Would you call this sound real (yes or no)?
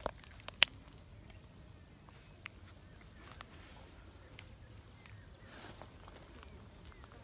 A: yes